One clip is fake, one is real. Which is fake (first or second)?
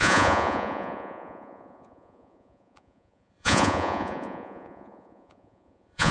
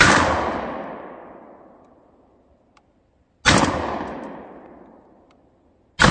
first